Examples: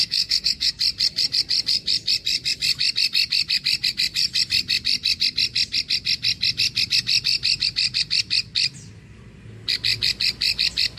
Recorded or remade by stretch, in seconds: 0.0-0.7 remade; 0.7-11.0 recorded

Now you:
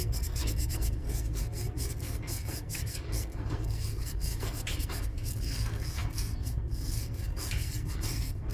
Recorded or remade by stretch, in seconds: 0.0-8.5 remade

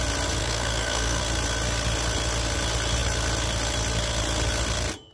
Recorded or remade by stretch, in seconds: 0.0-0.4 recorded; 0.4-1.2 remade; 1.2-5.1 recorded

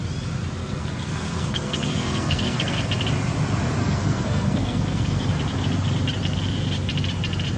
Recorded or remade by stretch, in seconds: 0.0-0.6 recorded; 0.6-2.9 remade; 2.9-3.8 recorded; 3.8-5.3 remade; 5.3-7.6 recorded

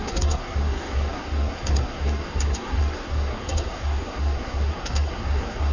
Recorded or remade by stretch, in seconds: 0.0-5.7 remade

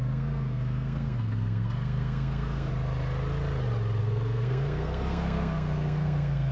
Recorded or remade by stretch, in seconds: 0.0-2.7 remade; 2.7-4.0 recorded; 4.0-6.5 remade

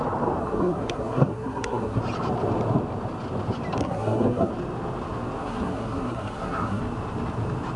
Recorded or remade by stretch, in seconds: 0.0-0.4 recorded; 0.4-2.0 remade; 2.0-3.8 recorded; 3.8-4.5 remade; 4.5-5.4 recorded; 5.4-6.8 remade; 6.8-7.8 recorded

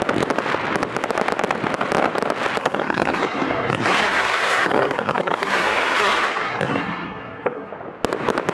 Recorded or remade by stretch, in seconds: 0.0-2.6 recorded; 2.6-7.7 remade; 7.7-8.5 recorded